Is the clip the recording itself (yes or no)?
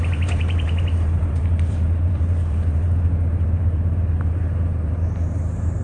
no